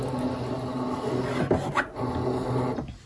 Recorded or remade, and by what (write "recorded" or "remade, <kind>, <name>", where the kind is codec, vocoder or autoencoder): recorded